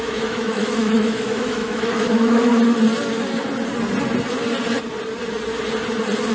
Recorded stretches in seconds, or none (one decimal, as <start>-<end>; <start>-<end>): 2.5-6.3